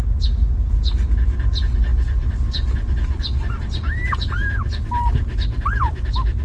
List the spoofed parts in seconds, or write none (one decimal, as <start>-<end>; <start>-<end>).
none